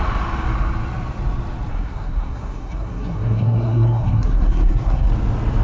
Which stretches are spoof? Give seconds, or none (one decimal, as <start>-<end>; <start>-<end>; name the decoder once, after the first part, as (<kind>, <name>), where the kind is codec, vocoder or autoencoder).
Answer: 1.7-5.1 (codec, SNAC)